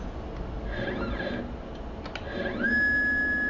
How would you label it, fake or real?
real